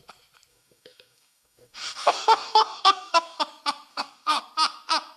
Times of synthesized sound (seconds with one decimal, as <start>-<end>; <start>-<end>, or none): 0.5-3.4; 3.9-4.4